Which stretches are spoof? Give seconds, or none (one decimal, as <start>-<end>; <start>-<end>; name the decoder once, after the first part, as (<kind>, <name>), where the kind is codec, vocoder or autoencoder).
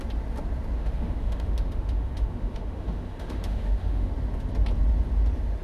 0.8-4.1 (autoencoder, DAC-VAE)